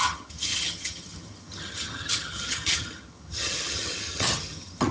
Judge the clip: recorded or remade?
remade